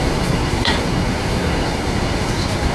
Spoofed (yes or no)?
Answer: yes